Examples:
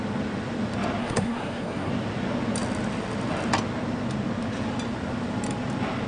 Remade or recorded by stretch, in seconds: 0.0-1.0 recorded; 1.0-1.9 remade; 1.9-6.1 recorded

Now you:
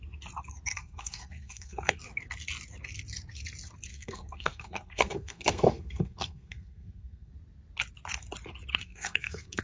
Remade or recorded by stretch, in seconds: 0.0-0.7 recorded; 0.7-2.0 remade; 2.0-3.9 recorded; 3.9-7.3 remade; 7.3-8.7 recorded; 8.7-9.6 remade

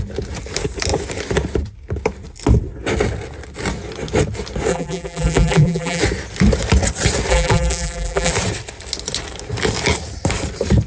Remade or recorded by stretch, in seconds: 0.0-4.7 recorded; 4.7-6.0 remade; 6.0-7.3 recorded; 7.3-8.3 remade; 8.3-10.9 recorded

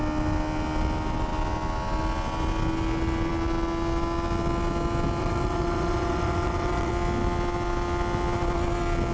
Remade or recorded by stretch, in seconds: 0.0-5.2 recorded; 5.2-6.9 remade; 6.9-9.1 recorded

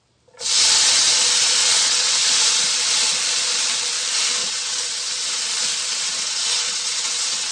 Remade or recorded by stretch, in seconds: 0.0-1.6 recorded; 1.6-2.1 remade; 2.1-4.4 recorded; 4.4-5.4 remade; 5.4-5.9 recorded; 5.9-7.5 remade

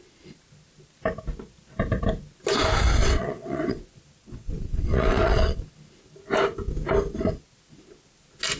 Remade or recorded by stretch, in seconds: 0.0-3.0 recorded; 3.0-3.8 remade; 3.8-4.2 recorded; 4.2-5.6 remade; 5.6-8.6 recorded